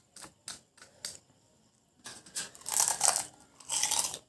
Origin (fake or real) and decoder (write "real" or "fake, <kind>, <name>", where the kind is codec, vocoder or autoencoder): real